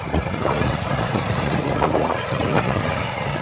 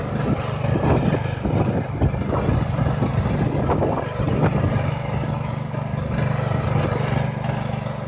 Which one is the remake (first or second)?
first